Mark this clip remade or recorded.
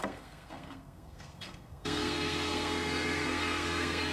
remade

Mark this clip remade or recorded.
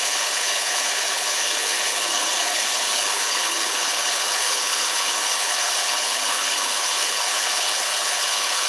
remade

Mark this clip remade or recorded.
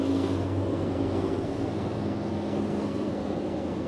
remade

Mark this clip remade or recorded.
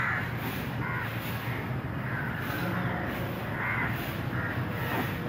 recorded